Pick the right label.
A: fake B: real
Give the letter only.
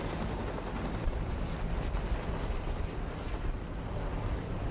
B